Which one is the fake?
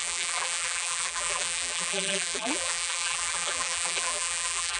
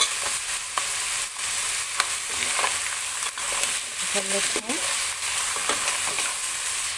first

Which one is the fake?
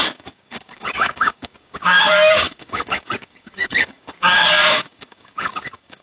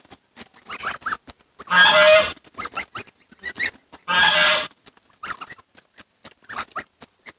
first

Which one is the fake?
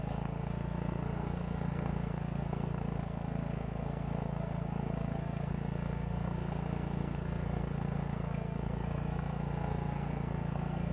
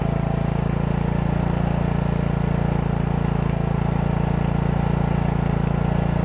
first